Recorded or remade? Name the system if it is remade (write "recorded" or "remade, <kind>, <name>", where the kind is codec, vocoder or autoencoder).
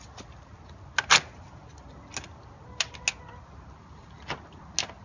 recorded